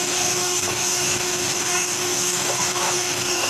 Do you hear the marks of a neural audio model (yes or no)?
yes